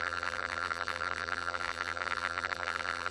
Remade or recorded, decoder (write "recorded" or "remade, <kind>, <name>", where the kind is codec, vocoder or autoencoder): remade, vocoder, BigVGAN v2